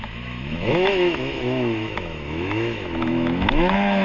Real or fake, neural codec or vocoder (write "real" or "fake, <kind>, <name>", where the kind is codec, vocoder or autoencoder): fake, autoencoder, DAC-VAE